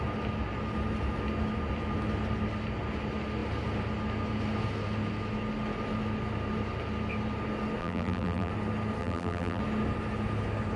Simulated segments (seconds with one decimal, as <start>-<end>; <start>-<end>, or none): 7.8-8.5; 9.0-9.6